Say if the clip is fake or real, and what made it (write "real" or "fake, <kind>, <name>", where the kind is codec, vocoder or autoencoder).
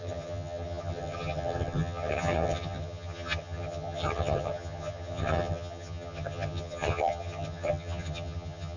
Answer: fake, vocoder, HiFi-GAN